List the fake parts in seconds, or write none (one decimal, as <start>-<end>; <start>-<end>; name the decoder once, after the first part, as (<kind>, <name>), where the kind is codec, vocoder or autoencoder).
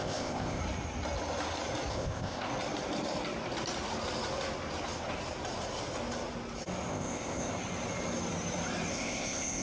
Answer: 0.0-0.6 (codec, ZipCodec); 1.9-2.5; 6.9-7.5; 8.9-9.6